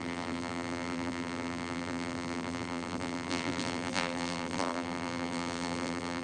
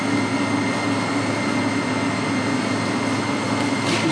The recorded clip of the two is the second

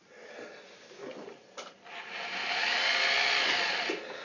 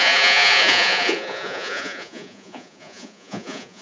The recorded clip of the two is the first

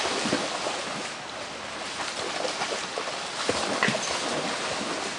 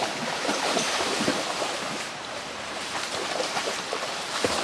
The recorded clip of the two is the first